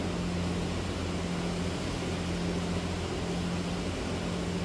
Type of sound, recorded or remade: recorded